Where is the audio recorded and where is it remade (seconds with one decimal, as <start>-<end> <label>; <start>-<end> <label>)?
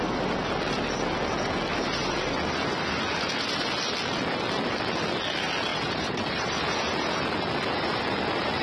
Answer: 0.0-5.7 recorded; 5.7-6.6 remade; 6.6-8.6 recorded